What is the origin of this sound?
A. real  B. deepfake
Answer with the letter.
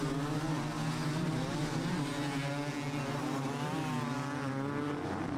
A